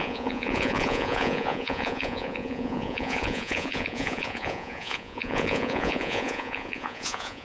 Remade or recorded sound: remade